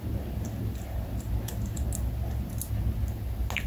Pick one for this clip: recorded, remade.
recorded